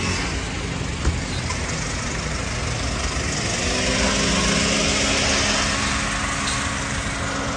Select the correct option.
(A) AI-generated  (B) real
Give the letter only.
B